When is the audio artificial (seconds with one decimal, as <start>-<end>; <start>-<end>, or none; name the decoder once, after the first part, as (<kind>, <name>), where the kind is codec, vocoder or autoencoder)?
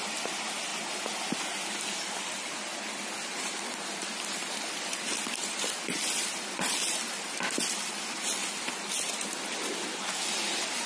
none